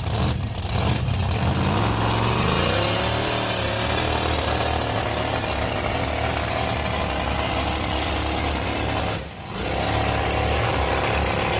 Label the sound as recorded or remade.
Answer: recorded